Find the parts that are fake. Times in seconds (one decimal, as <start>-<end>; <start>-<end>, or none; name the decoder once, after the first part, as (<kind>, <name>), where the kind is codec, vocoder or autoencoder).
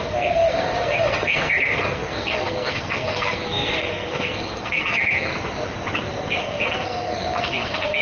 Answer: 0.0-5.3 (codec, SNAC); 6.4-8.0